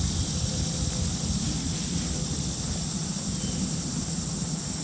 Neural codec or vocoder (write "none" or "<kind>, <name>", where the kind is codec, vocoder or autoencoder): none